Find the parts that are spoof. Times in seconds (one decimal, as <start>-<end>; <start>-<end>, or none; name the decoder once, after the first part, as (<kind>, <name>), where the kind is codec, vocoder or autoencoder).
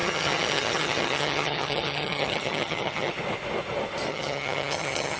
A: 0.0-3.1 (vocoder, HiFi-GAN); 4.1-5.2